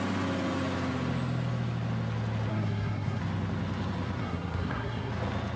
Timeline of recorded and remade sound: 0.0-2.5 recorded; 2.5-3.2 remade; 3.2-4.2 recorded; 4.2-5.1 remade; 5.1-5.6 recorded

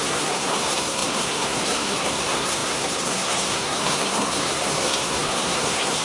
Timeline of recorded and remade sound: 0.0-6.0 remade